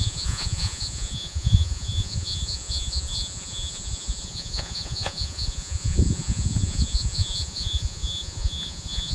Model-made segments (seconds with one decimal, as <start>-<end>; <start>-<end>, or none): 0.0-9.1

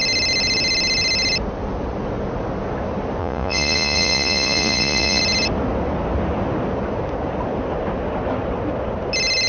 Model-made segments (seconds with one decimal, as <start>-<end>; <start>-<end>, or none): 3.2-5.2

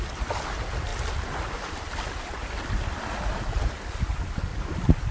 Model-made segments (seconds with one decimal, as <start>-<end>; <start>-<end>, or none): none